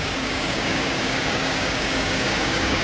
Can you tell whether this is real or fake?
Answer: fake